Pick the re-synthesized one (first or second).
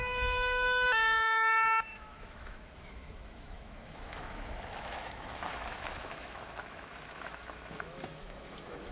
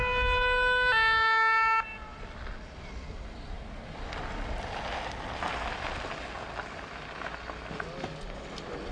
first